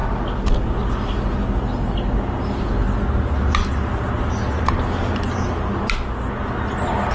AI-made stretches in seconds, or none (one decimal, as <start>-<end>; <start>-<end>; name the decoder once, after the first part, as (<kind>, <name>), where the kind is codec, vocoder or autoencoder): none